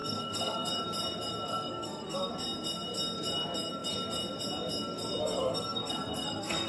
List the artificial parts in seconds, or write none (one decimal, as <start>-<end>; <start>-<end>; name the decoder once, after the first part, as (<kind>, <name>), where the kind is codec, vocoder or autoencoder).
0.0-0.7 (codec, SNAC); 1.5-2.3; 5.2-6.7